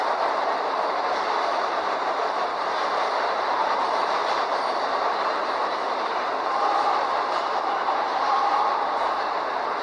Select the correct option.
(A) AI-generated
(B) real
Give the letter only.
A